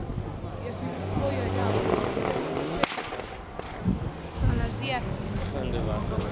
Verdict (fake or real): real